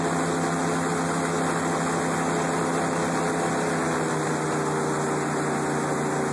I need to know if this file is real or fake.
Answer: real